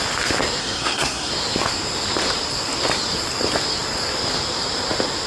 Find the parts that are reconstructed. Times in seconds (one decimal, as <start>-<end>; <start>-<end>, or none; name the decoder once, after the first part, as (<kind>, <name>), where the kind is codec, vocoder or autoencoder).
0.6-1.3 (codec, SNAC)